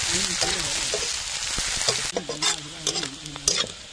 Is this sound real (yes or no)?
yes